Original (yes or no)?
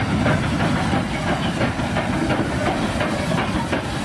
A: yes